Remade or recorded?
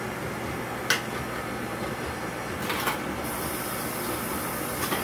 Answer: recorded